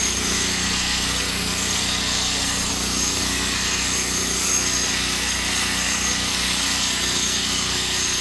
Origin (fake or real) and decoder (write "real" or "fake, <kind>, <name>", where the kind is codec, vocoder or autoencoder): fake, codec, SNAC